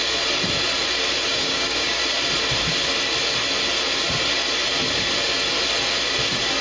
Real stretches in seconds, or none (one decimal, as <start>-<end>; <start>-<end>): 0.0-1.3; 2.0-6.6